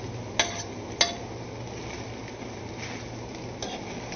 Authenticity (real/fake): real